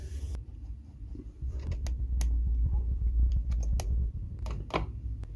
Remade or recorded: recorded